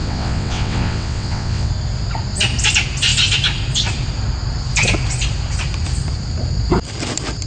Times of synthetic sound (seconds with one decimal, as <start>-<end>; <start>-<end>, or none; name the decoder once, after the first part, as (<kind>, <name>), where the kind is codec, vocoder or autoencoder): 0.0-1.7 (vocoder, WaveNeXt)